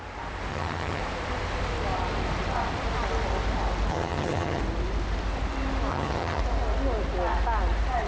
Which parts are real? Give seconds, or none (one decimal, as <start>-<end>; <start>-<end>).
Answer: 0.0-0.5; 1.0-3.9; 4.6-5.9; 6.4-8.1